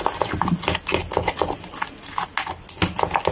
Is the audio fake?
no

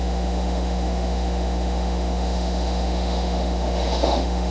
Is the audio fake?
yes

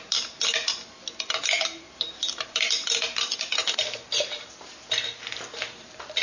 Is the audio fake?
no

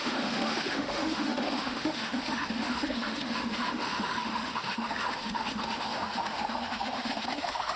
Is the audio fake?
yes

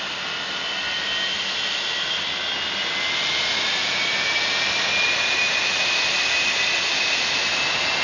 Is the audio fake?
no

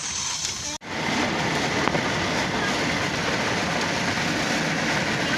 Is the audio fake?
no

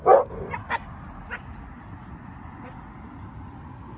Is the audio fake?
no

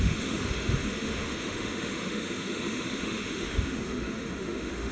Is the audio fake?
yes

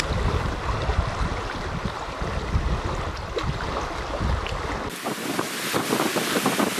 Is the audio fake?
no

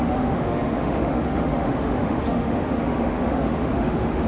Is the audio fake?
yes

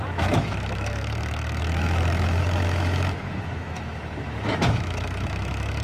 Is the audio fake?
yes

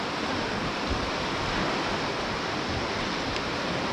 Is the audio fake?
no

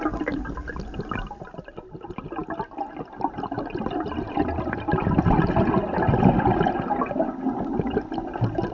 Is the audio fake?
no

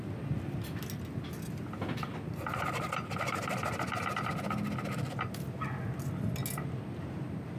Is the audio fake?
no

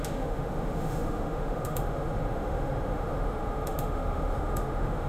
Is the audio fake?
yes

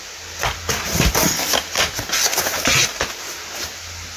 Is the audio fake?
no